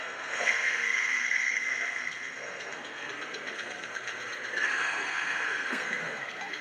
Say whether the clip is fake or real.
fake